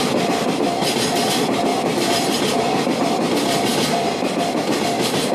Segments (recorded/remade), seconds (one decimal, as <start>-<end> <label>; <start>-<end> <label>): 0.0-1.7 recorded; 1.7-5.3 remade